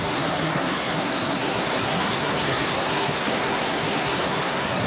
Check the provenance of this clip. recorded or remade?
remade